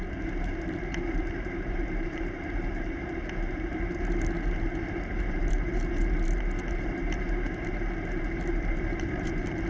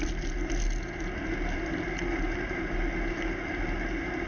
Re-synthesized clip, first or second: first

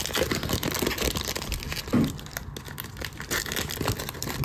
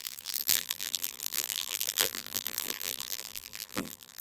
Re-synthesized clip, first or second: second